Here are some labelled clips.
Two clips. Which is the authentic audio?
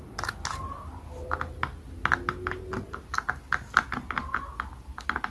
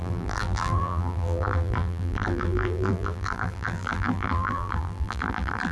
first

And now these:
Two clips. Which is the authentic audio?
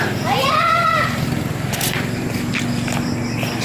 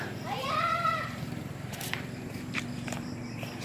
first